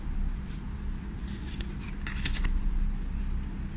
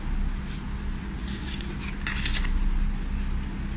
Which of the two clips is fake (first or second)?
first